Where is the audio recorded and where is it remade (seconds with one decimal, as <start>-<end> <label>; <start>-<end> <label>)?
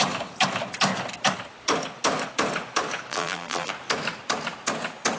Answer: 0.0-3.1 recorded; 3.1-3.7 remade; 3.7-5.2 recorded